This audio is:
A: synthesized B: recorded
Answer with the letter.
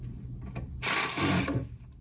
B